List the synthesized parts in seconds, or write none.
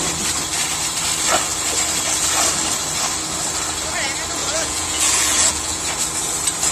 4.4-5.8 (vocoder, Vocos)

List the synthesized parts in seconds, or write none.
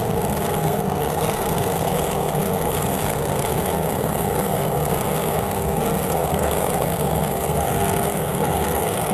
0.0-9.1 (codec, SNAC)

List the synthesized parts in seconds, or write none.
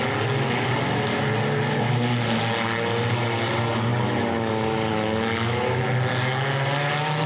4.9-5.8 (autoencoder, DAC-VAE)